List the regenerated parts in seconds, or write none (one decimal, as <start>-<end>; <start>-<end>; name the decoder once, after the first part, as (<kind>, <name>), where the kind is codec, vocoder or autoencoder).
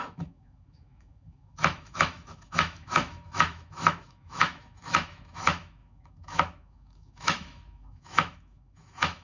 0.0-9.2 (autoencoder, DAC-VAE)